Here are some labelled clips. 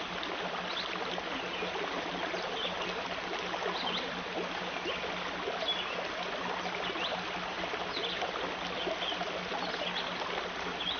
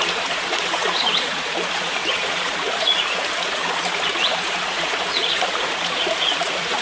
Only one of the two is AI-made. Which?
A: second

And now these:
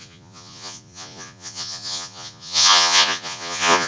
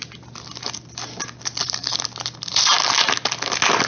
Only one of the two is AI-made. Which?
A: first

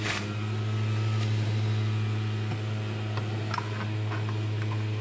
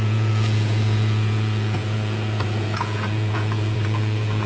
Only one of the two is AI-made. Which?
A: second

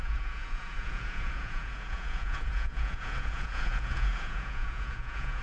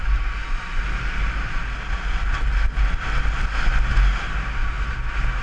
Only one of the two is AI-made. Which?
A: first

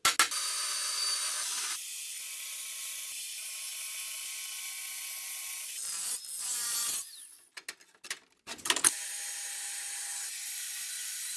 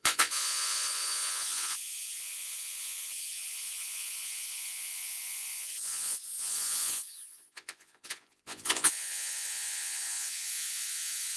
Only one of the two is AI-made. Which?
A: second